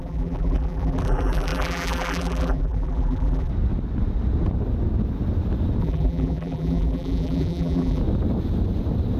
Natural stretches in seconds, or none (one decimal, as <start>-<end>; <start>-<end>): 3.5-5.8; 8.0-9.2